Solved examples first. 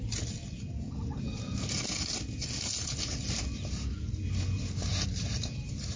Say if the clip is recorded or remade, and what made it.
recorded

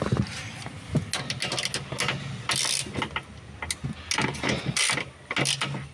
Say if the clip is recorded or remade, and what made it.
recorded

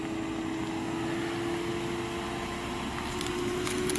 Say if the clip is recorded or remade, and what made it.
recorded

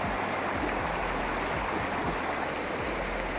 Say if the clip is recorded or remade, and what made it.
recorded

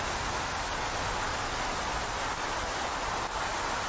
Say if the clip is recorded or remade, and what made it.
recorded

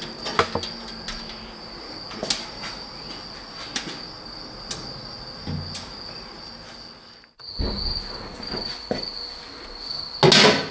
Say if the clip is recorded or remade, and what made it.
recorded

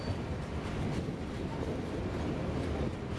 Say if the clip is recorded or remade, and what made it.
recorded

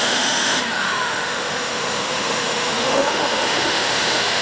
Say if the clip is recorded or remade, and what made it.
remade, autoencoder, DAC-VAE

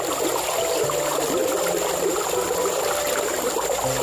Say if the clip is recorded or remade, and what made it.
recorded